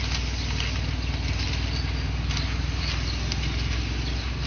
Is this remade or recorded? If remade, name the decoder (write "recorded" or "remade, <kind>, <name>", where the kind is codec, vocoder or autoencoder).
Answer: recorded